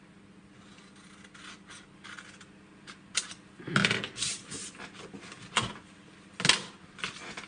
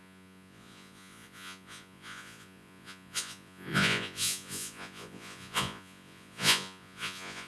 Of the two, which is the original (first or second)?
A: first